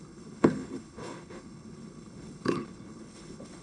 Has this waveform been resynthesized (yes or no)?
yes